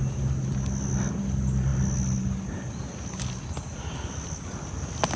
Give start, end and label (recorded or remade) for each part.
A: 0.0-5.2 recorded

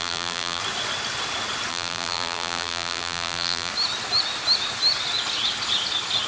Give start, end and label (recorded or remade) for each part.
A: 0.0-0.6 remade; 0.6-1.7 recorded; 1.7-3.7 remade; 3.7-6.3 recorded